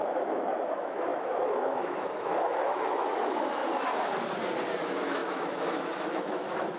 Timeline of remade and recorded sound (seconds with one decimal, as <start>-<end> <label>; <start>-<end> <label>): 0.0-3.6 remade; 3.6-4.8 recorded; 4.8-6.8 remade